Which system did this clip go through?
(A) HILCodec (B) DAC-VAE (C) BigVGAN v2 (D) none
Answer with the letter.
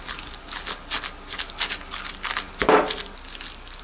D